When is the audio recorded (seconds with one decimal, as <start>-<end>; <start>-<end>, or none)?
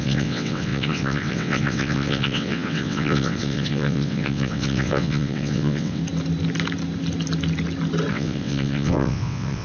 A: 6.0-8.1